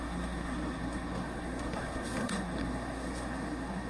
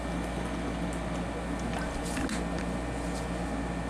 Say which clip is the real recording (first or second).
second